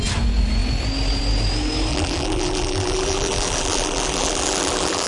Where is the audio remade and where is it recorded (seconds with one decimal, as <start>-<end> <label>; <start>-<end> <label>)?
0.0-1.9 recorded; 1.9-5.1 remade